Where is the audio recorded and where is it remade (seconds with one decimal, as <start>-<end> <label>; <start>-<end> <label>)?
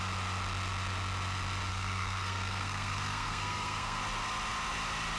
0.0-1.7 recorded; 1.7-4.0 remade; 4.0-5.2 recorded